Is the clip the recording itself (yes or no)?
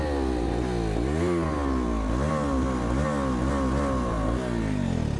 yes